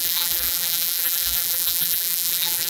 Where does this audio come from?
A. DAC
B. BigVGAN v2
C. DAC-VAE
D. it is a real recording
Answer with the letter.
B